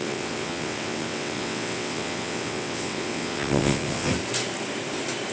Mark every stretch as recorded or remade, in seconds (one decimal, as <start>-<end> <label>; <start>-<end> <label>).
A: 0.0-4.1 remade; 4.1-5.3 recorded

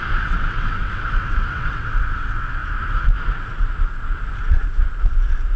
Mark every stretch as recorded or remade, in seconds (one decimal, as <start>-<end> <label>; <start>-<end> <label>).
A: 0.0-2.6 remade; 2.6-5.6 recorded

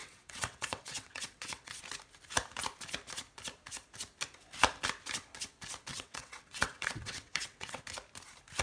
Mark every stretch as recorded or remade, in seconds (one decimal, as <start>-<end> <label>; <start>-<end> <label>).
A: 0.0-1.8 remade; 1.8-5.9 recorded; 5.9-7.8 remade; 7.8-8.6 recorded

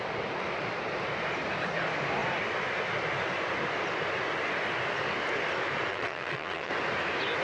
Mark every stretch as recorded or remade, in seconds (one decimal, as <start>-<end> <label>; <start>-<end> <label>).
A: 0.0-5.9 recorded; 5.9-6.7 remade; 6.7-7.4 recorded

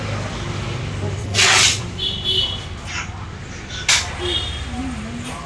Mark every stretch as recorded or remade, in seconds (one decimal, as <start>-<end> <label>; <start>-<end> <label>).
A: 0.0-1.2 recorded; 1.2-1.8 remade; 1.8-5.5 recorded